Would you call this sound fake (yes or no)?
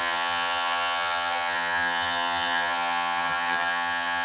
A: yes